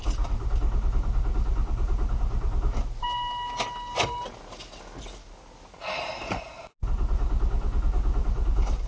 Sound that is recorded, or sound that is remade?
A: recorded